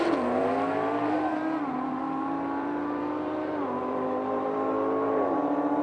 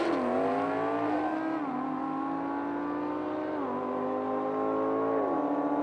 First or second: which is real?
second